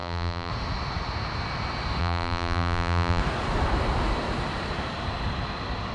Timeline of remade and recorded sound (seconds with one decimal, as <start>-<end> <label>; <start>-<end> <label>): 0.0-0.5 remade; 0.5-2.0 recorded; 2.0-3.2 remade; 3.2-5.9 recorded